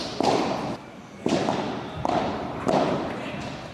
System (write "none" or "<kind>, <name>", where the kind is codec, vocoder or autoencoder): none